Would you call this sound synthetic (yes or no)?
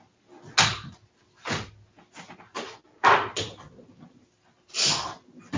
no